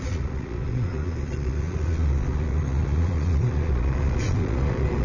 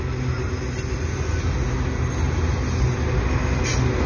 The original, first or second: second